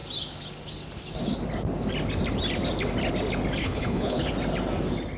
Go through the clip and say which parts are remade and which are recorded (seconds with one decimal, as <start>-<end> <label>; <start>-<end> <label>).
0.0-3.6 recorded; 3.6-4.3 remade; 4.3-5.2 recorded